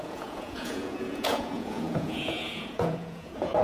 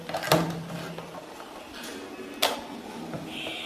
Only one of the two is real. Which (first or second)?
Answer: second